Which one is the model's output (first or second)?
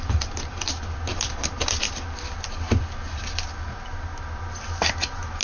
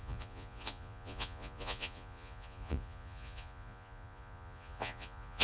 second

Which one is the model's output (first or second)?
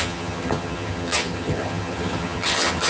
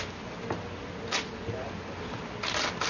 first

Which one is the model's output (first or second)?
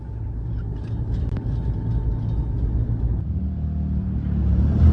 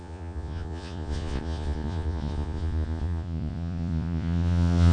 second